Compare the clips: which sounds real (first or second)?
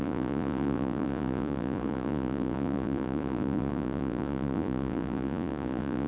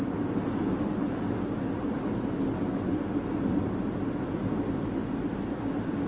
second